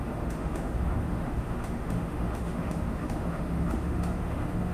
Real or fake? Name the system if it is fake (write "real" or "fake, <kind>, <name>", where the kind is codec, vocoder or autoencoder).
fake, autoencoder, DAC-VAE